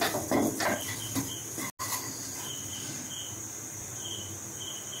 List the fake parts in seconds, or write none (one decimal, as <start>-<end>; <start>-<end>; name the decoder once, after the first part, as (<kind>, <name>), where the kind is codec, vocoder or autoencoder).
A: none